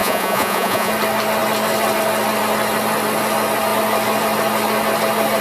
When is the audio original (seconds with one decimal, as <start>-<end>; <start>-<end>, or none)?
0.9-5.4